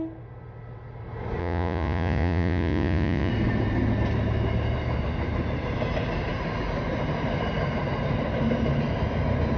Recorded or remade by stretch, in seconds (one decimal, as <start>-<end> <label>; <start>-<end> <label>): 0.0-1.4 recorded; 1.4-3.3 remade; 3.3-9.6 recorded